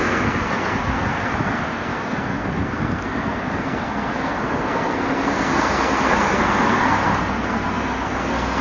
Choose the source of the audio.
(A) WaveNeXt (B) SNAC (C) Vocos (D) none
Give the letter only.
B